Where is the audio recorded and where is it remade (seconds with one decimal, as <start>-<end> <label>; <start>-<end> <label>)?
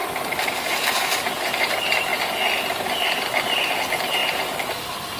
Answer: 0.0-0.5 recorded; 0.5-2.1 remade; 2.1-3.6 recorded; 3.6-4.2 remade; 4.2-5.2 recorded